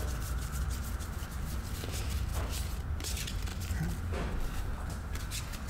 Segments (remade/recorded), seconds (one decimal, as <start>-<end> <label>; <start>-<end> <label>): 0.0-5.7 recorded